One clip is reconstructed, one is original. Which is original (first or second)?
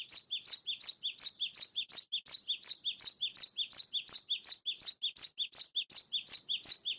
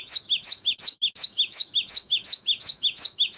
first